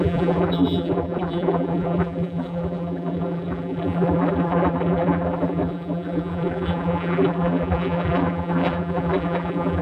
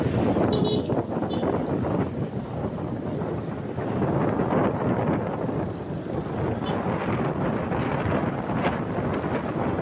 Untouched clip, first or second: second